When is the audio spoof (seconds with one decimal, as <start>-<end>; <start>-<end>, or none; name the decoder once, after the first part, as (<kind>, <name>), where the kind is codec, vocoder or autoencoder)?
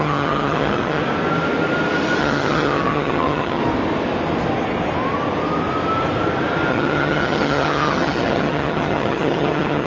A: 0.0-1.0 (vocoder, HiFi-GAN); 2.2-3.6; 6.7-9.9